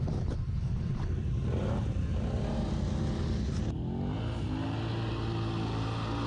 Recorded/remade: recorded